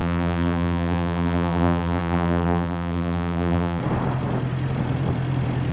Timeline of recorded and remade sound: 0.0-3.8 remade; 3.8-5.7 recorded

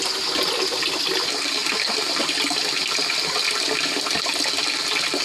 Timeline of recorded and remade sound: 0.0-5.2 recorded

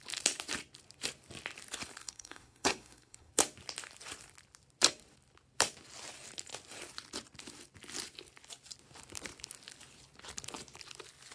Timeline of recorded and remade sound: 0.0-2.0 recorded; 2.0-3.3 remade; 3.3-11.3 recorded

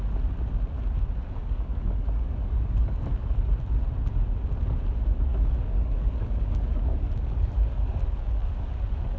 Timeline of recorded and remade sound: 0.0-1.4 recorded; 1.4-3.5 remade; 3.5-5.3 recorded; 5.3-9.2 remade

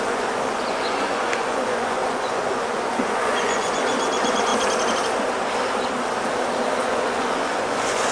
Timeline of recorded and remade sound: 0.0-4.5 remade; 4.5-6.6 recorded; 6.6-8.1 remade

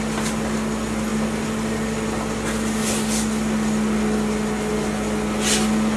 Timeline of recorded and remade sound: 0.0-6.0 recorded

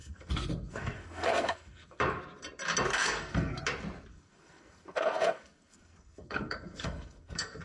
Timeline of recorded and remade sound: 0.0-2.0 remade; 2.0-2.9 recorded; 2.9-3.6 remade; 3.6-4.1 recorded; 4.1-7.6 remade

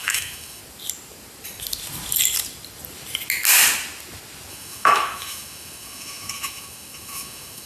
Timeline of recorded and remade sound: 0.0-0.6 remade; 0.6-4.5 recorded; 4.5-7.7 remade